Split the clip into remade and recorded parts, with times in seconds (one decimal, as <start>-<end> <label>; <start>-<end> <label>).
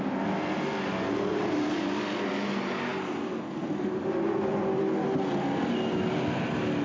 0.0-1.3 recorded; 1.3-2.3 remade; 2.3-2.9 recorded; 2.9-4.8 remade; 4.8-6.8 recorded